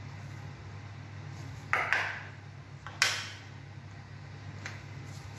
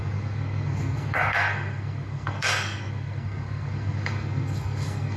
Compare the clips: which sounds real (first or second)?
first